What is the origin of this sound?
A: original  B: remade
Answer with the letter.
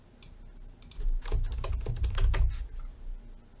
A